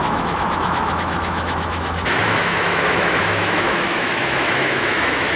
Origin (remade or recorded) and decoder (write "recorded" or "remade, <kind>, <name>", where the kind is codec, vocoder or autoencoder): remade, autoencoder, DAC-VAE